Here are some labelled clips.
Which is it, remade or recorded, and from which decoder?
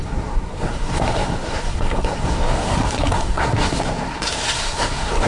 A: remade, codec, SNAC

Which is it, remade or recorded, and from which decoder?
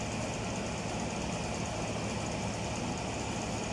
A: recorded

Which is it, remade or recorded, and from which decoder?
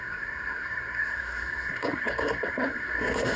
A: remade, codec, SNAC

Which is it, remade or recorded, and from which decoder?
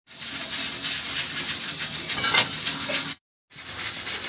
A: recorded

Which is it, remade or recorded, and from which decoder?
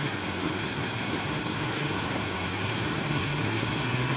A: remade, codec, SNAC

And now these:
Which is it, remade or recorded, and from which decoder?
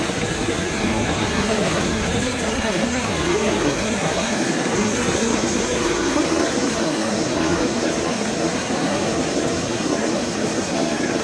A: remade, codec, SNAC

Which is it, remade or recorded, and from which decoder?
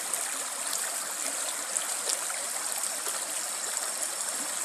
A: recorded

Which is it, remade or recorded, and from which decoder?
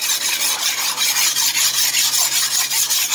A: recorded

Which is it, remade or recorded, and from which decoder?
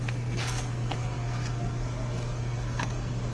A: remade, codec, SNAC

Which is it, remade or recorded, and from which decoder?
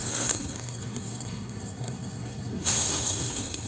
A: remade, codec, SNAC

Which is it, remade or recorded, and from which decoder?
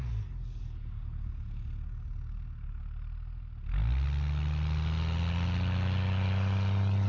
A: recorded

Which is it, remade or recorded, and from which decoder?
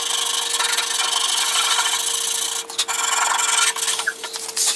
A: recorded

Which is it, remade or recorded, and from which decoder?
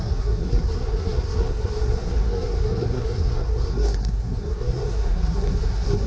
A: remade, codec, SNAC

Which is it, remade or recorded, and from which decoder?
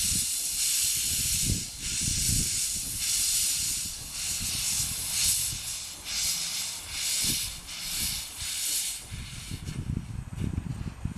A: recorded